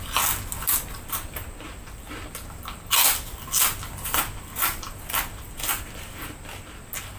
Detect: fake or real real